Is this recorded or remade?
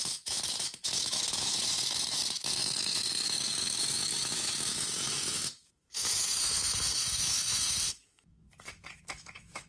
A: remade